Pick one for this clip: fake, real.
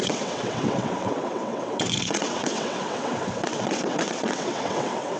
fake